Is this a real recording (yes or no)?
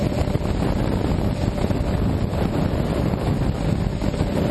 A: yes